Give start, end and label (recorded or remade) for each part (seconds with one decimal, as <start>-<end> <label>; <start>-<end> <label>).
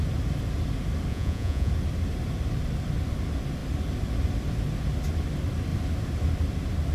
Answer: 0.0-1.1 recorded; 1.1-1.7 remade; 1.7-6.9 recorded